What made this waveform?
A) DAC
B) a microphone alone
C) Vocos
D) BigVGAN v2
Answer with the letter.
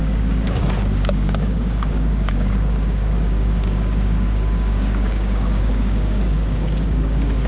A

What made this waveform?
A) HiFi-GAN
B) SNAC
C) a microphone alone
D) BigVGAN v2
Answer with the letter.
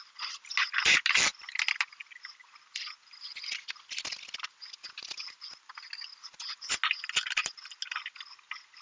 C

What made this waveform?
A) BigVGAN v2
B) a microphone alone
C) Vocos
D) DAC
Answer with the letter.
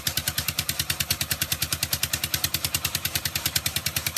A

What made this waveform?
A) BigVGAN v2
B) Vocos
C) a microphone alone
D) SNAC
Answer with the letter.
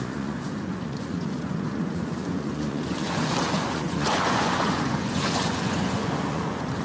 B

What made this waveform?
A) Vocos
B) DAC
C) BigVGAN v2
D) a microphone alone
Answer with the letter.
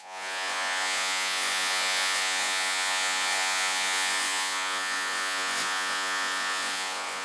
A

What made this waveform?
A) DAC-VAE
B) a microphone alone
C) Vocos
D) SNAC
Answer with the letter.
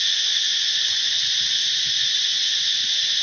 C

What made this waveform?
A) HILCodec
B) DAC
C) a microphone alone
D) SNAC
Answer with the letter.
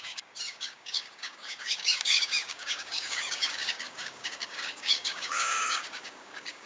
B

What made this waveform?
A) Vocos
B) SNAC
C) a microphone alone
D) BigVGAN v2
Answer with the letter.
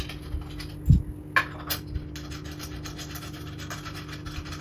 C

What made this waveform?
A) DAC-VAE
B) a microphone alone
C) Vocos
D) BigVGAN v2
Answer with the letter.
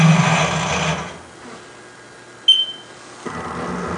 B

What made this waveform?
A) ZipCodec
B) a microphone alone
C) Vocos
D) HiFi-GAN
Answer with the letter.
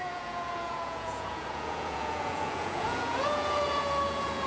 C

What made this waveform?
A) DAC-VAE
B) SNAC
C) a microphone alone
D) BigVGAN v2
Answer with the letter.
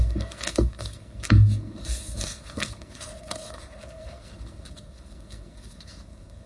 B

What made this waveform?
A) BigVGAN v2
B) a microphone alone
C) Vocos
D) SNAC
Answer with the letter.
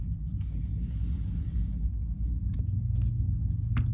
B